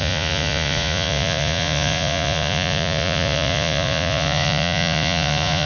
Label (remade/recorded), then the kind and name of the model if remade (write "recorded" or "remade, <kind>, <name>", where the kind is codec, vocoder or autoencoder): remade, vocoder, Vocos